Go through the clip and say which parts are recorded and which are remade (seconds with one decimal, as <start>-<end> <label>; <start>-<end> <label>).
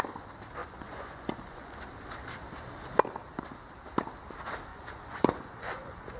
0.0-0.6 recorded; 0.6-1.8 remade; 1.8-4.7 recorded; 4.7-6.2 remade